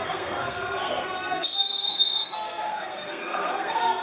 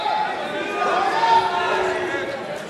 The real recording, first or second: second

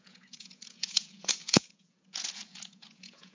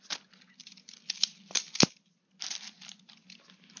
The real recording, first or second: second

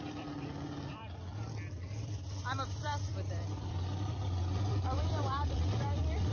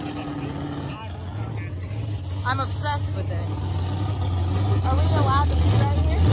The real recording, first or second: second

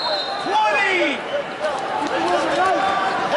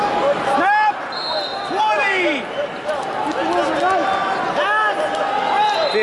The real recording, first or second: second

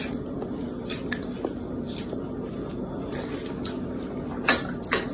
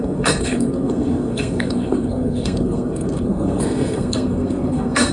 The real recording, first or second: first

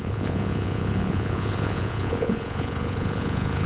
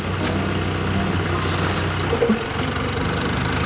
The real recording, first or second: second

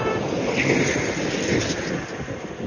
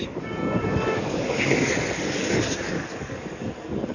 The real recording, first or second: first